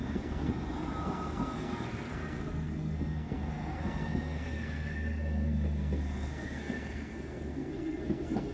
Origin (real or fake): fake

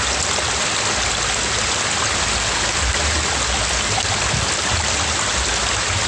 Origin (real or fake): real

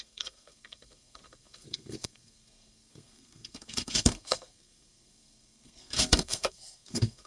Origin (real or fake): fake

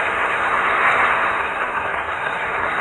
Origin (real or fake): fake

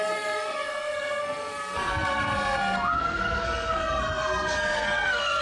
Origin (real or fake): fake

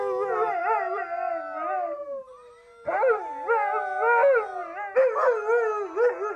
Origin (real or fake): real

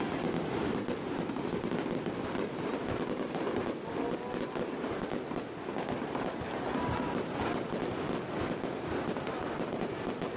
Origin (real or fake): real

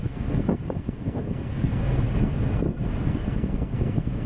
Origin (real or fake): fake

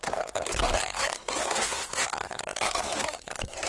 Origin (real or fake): fake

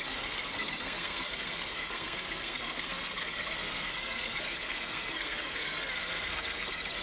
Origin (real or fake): fake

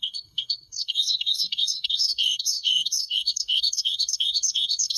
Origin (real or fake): fake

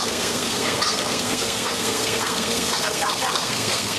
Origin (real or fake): fake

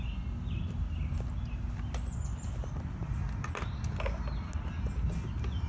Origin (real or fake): real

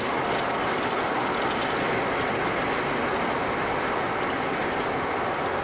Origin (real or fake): real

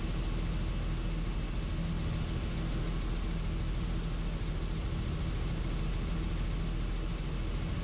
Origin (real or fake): real